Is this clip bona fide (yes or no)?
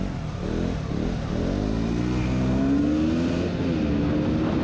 yes